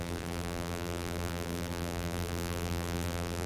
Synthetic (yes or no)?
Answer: yes